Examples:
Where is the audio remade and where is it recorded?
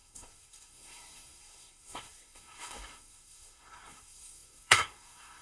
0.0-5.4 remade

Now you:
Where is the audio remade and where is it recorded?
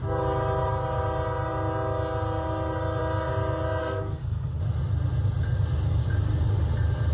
0.0-3.8 recorded; 3.8-4.6 remade; 4.6-7.1 recorded